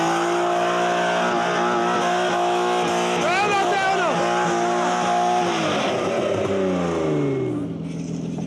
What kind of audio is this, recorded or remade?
recorded